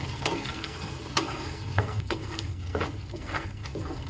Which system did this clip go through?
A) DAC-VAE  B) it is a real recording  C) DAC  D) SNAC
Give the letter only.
D